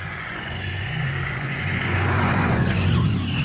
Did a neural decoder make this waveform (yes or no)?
yes